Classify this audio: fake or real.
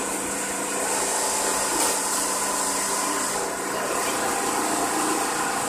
real